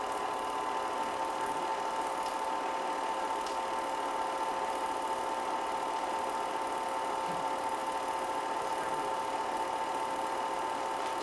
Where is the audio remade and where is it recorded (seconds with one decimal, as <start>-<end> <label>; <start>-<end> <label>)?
0.0-11.2 recorded